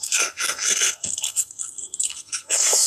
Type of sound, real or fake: fake